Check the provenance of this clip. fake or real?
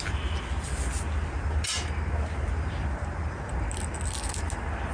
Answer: real